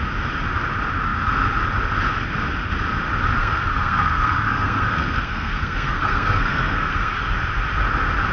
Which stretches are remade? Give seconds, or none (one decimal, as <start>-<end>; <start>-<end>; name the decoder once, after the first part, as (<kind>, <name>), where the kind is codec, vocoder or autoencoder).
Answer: 3.4-7.2 (codec, SNAC)